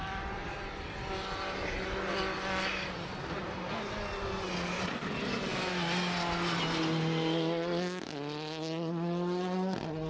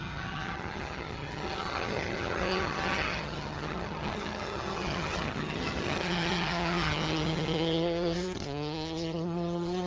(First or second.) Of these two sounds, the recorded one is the first